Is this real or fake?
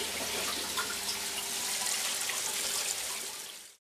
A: real